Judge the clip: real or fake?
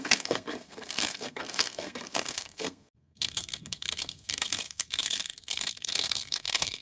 fake